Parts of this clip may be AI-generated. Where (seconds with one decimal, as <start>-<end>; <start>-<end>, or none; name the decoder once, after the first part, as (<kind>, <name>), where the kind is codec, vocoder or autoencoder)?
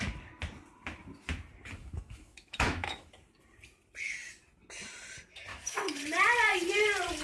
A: 1.8-3.1 (autoencoder, DAC-VAE); 5.5-6.0